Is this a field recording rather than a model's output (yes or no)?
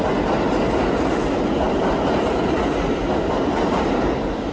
yes